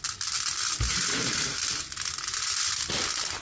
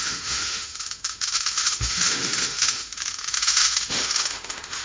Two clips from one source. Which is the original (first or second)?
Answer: first